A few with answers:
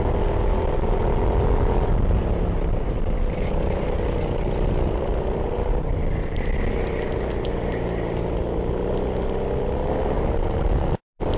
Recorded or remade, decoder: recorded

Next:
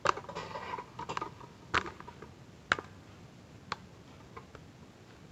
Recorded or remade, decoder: recorded